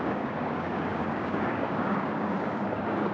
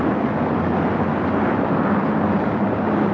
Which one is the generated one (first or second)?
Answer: first